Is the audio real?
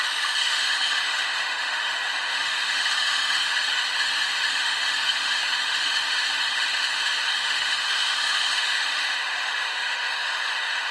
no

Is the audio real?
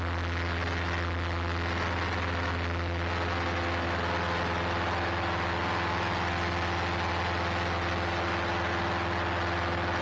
yes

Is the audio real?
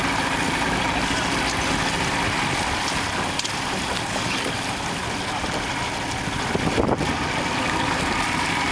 yes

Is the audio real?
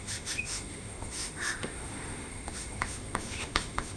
no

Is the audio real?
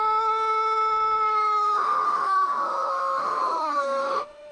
no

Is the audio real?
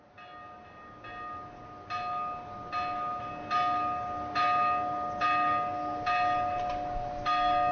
yes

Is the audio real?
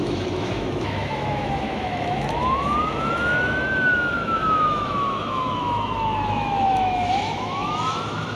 no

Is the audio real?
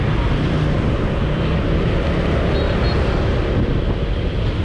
yes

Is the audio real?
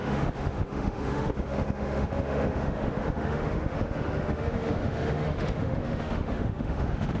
no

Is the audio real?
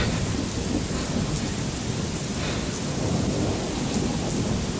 yes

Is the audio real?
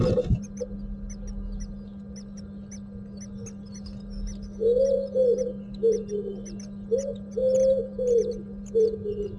yes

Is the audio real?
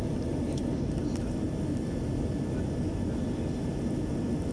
yes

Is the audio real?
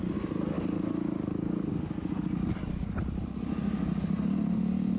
yes